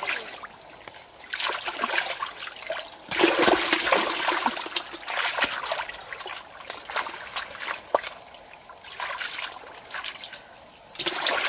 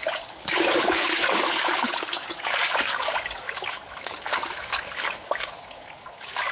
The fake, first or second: second